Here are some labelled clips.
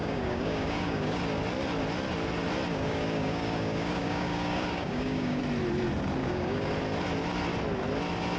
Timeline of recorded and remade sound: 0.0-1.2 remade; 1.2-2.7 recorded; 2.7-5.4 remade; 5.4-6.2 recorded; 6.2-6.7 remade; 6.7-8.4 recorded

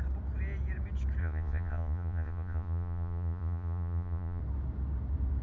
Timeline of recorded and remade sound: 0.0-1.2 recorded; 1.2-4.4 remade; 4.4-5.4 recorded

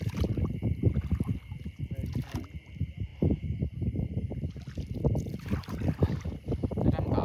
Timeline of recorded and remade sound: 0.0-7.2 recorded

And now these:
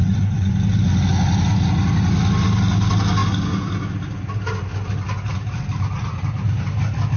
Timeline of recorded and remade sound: 0.0-0.5 remade; 0.5-7.2 recorded